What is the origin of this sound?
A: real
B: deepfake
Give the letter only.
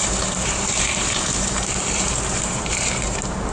B